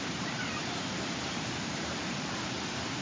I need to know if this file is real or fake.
fake